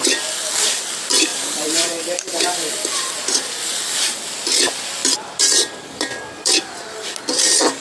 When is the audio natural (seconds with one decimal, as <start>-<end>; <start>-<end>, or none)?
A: 0.0-1.3; 2.7-7.8